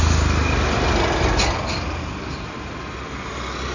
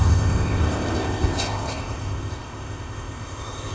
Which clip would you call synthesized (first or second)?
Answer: second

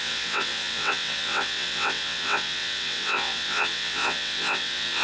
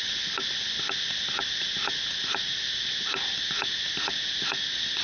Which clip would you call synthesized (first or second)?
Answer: first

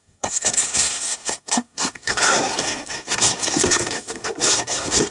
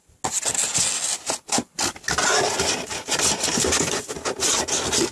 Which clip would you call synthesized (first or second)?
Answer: first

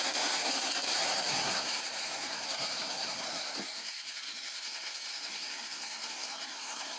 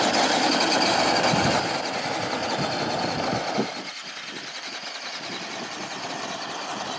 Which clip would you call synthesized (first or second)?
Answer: first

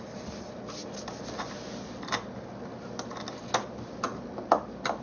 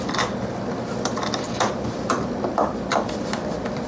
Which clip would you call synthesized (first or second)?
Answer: second